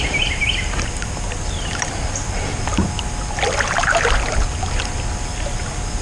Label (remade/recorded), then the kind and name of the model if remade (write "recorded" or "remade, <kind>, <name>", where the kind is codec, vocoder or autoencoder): recorded